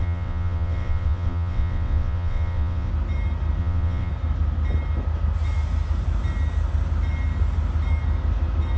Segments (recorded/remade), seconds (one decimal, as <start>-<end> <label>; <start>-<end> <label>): 0.0-2.9 remade; 2.9-3.6 recorded; 3.6-4.1 remade; 4.1-8.8 recorded